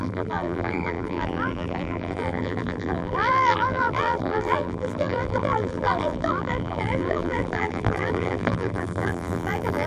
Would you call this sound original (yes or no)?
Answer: no